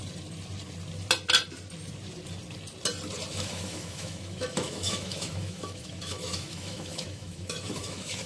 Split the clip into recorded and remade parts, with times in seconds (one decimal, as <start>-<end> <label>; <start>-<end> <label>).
0.0-3.3 recorded; 3.3-8.3 remade